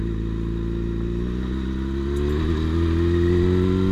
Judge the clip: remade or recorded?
recorded